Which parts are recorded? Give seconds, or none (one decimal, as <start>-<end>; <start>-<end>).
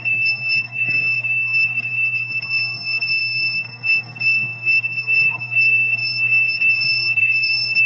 none